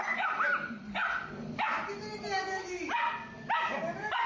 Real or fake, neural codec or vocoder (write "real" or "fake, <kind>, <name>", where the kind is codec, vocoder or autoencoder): real